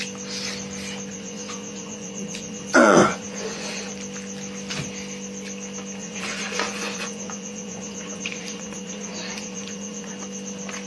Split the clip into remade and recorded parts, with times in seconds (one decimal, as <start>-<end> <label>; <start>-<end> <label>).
0.0-1.1 recorded; 1.1-3.9 remade; 3.9-6.0 recorded; 6.0-10.1 remade; 10.1-10.9 recorded